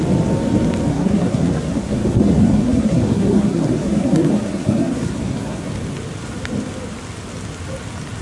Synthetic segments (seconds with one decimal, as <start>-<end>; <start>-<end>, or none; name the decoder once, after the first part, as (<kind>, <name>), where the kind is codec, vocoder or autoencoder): 0.9-5.7 (codec, SNAC)